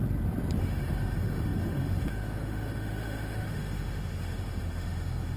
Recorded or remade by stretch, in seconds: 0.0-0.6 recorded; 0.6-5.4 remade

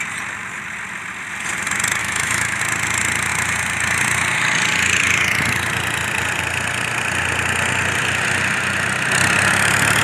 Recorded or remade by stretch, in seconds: 0.0-2.0 recorded; 2.0-2.6 remade; 2.6-10.0 recorded

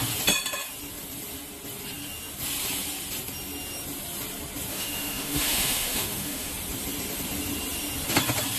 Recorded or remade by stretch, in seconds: 0.0-4.7 recorded; 4.7-6.5 remade; 6.5-8.6 recorded

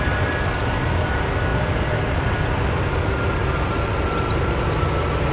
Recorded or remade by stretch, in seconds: 0.0-5.3 recorded

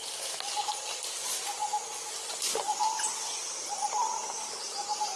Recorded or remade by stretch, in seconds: 0.0-5.2 recorded

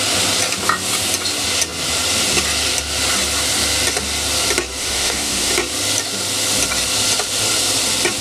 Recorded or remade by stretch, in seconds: 0.0-4.8 recorded; 4.8-5.5 remade; 5.5-8.2 recorded